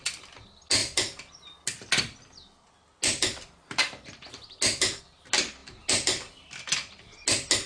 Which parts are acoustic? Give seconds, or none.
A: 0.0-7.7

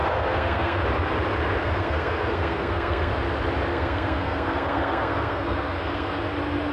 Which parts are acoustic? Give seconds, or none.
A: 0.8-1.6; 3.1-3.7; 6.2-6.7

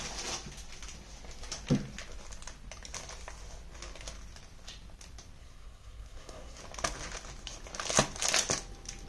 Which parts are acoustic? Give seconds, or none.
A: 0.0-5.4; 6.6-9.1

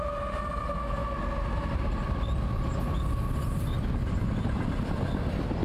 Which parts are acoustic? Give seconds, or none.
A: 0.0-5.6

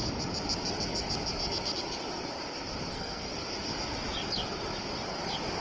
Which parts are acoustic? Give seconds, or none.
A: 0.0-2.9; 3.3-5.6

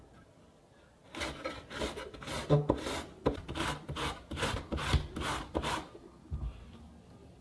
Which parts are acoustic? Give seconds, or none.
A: 0.0-7.4